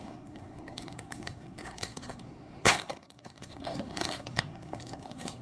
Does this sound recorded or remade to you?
remade